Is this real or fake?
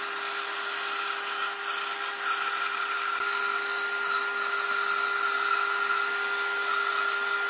real